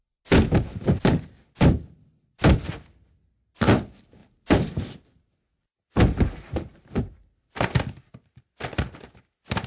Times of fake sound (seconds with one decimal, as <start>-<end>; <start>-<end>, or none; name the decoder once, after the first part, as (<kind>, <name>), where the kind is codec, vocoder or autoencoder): none